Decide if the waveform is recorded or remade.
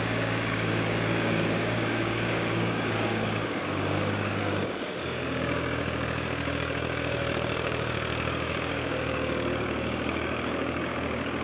remade